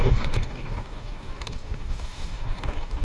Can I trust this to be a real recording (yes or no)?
no